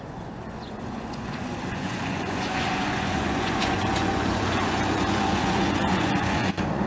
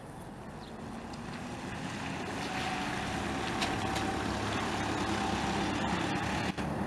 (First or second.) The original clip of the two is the second